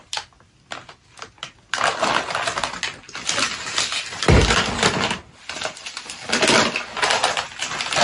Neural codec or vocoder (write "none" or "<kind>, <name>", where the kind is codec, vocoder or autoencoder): none